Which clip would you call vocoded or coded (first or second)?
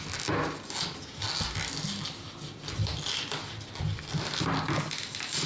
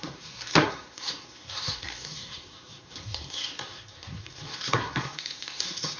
second